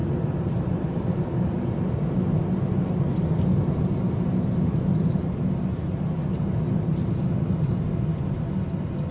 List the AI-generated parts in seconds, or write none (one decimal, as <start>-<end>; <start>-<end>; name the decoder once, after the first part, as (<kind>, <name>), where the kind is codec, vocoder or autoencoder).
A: none